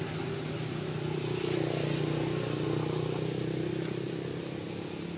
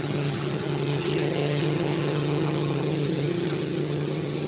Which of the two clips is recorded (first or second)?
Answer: first